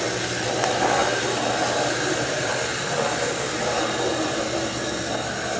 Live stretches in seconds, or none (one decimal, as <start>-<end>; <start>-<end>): 0.0-1.0; 2.5-5.6